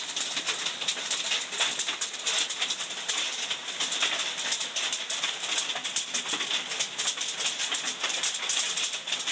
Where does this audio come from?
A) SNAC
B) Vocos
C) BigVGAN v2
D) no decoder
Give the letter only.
D